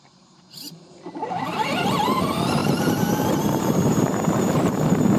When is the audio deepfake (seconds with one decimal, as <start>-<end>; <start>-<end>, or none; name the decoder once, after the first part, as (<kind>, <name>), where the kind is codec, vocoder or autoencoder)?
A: 0.0-5.2 (vocoder, BigVGAN v2)